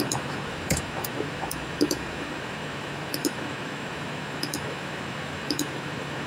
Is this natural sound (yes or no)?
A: no